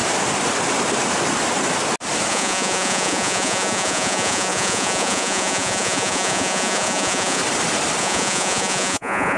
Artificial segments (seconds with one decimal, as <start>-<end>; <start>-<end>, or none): 2.3-7.4; 8.0-9.4